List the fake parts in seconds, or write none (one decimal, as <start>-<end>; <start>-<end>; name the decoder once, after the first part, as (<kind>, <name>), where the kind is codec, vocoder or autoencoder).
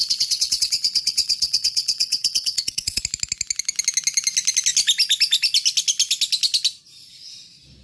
0.0-3.0 (vocoder, WaveNeXt)